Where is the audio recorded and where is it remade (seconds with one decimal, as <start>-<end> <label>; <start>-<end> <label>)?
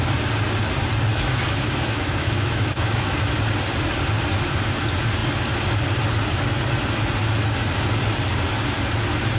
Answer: 0.0-1.1 recorded; 1.1-3.4 remade; 3.4-9.4 recorded